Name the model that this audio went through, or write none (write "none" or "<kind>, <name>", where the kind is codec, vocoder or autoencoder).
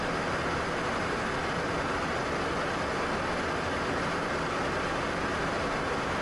none